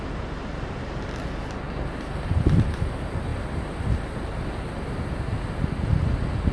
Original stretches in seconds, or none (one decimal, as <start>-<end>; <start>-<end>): 0.0-6.5

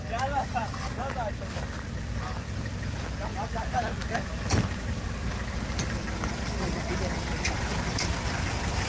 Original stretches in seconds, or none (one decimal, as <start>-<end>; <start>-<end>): 0.0-8.9

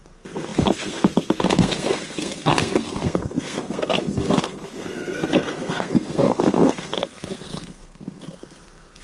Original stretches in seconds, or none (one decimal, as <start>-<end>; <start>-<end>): none

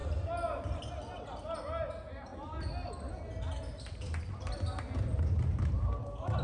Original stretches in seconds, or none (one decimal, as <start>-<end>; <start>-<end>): 0.0-6.4

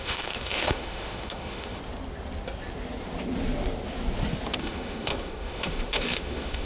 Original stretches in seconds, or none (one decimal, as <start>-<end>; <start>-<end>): 1.8-4.6

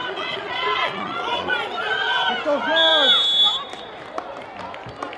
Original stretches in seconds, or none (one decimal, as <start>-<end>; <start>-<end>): 2.3-5.2